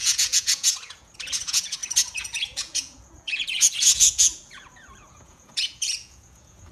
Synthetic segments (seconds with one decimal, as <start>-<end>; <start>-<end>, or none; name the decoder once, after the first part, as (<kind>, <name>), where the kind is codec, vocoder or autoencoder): 0.0-6.7 (vocoder, Vocos)